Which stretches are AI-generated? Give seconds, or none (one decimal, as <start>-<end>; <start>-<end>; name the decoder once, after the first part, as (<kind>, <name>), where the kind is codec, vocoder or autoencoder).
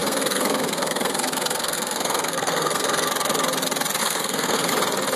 0.0-3.1 (codec, SNAC); 4.0-4.7